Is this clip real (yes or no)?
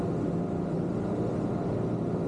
yes